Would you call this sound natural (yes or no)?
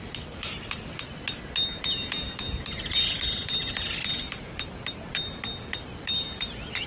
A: yes